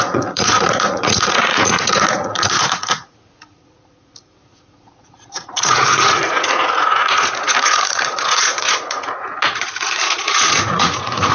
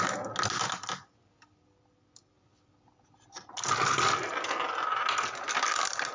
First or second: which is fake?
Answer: first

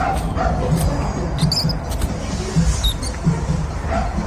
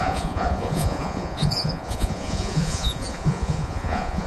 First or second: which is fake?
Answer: second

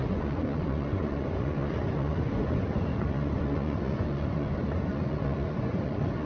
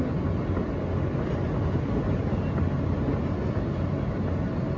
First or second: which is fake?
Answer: first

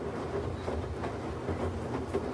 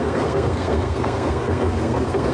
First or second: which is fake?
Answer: second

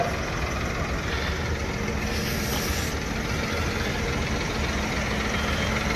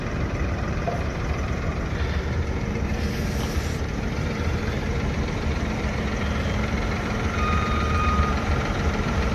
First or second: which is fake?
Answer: second